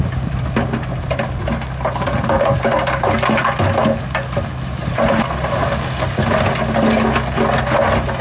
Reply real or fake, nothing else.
real